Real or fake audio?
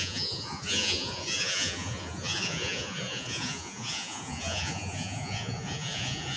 fake